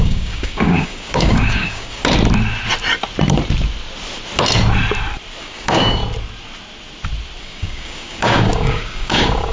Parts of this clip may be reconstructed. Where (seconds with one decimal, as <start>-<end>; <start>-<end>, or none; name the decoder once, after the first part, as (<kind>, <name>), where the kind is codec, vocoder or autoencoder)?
0.0-2.0 (codec, DAC); 5.4-6.0; 7.4-9.5